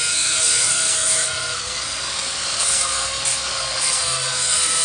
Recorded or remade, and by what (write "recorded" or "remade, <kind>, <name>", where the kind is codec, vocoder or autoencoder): remade, codec, SNAC